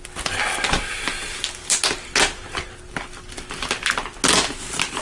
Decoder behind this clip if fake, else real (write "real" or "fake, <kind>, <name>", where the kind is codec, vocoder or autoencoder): real